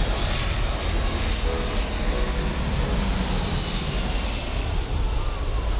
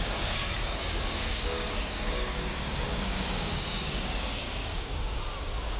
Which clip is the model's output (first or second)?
second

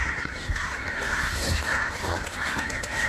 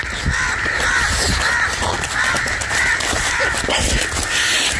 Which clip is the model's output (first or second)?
first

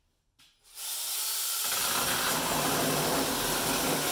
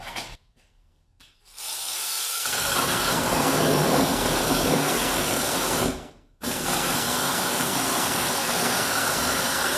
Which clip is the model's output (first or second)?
second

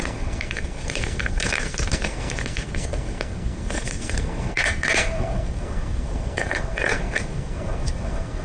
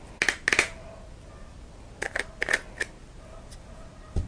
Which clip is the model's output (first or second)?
first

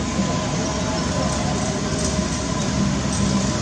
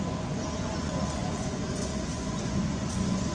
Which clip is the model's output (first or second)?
second